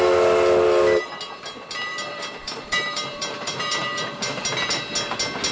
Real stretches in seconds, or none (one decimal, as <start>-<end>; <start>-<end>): 0.0-1.9; 4.4-5.5